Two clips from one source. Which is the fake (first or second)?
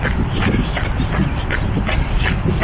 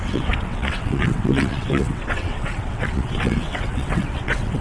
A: second